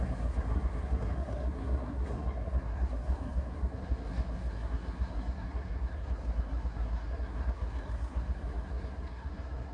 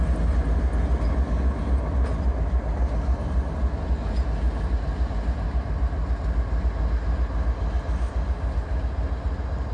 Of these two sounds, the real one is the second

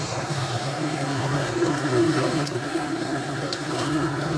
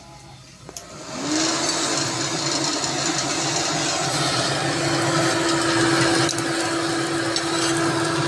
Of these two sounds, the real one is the second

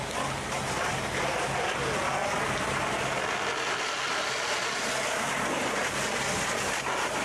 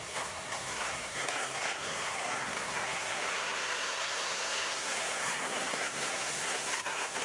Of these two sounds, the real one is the first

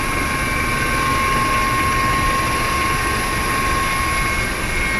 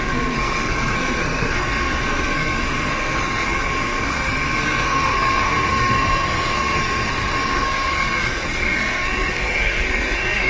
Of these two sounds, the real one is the first